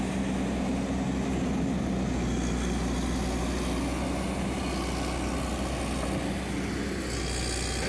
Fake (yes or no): no